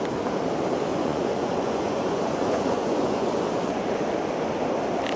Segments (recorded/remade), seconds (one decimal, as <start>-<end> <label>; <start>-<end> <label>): 0.0-0.9 recorded; 0.9-4.0 remade; 4.0-5.2 recorded